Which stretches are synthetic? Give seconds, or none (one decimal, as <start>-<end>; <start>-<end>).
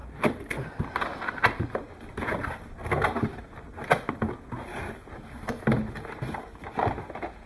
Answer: none